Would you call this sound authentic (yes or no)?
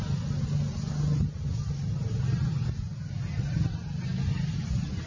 yes